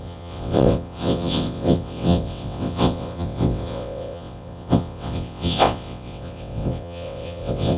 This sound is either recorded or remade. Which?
remade